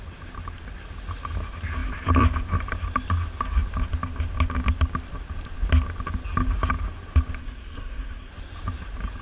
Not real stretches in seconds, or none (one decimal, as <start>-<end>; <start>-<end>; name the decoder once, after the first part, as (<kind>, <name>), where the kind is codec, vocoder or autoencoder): 7.4-8.3 (codec, SNAC)